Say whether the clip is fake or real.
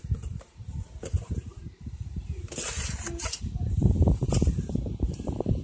fake